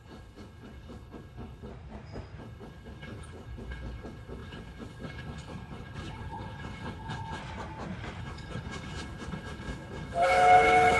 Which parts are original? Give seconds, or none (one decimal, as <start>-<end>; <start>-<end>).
1.7-2.4; 7.4-8.2